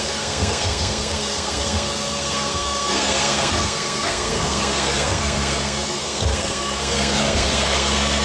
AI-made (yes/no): yes